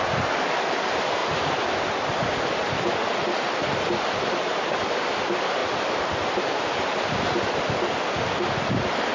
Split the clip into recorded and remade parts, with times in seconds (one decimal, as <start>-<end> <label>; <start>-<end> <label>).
0.0-1.2 remade; 1.2-4.5 recorded; 4.5-9.1 remade

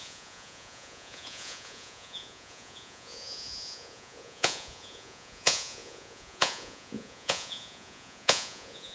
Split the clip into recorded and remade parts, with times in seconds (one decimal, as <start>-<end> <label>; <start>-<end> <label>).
0.0-8.9 remade

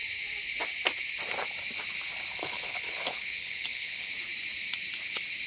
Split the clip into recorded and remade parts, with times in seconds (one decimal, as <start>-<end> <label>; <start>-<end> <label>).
0.0-2.3 recorded; 2.3-4.1 remade; 4.1-5.5 recorded

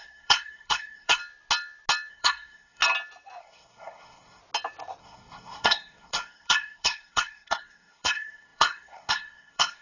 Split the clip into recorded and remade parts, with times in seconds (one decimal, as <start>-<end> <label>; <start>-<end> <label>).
0.0-1.2 remade; 1.2-2.1 recorded; 2.1-2.8 remade; 2.8-3.4 recorded; 3.4-4.4 remade; 4.4-5.0 recorded; 5.0-9.8 remade

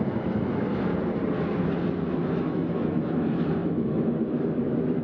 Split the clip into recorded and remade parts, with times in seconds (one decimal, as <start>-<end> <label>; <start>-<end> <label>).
0.0-0.9 remade; 0.9-2.1 recorded; 2.1-5.0 remade

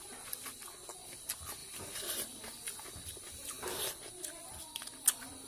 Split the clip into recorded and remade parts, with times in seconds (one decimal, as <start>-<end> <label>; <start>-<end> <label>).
0.0-5.5 recorded

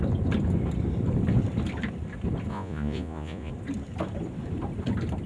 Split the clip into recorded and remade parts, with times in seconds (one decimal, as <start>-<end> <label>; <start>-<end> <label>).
0.0-2.5 recorded; 2.5-3.5 remade; 3.5-5.3 recorded